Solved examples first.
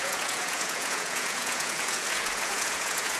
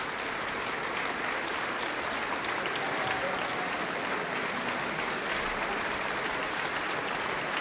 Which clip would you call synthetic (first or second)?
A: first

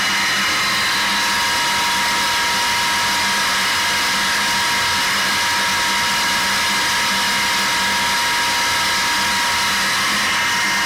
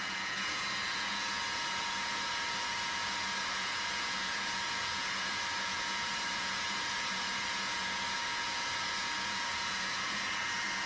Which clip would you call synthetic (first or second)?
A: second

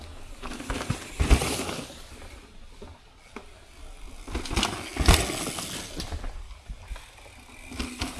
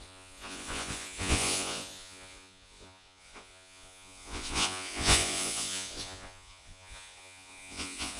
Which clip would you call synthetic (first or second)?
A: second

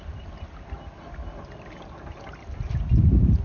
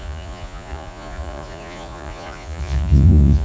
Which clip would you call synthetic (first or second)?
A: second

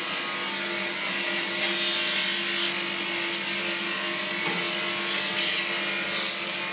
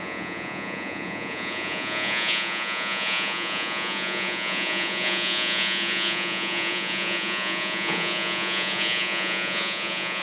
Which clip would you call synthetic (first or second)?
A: second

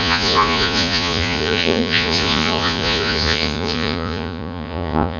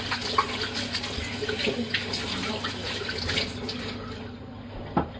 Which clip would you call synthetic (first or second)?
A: first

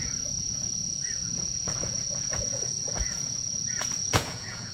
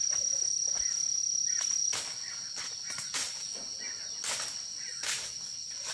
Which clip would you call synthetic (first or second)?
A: first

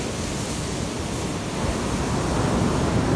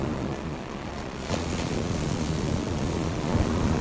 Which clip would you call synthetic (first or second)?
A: second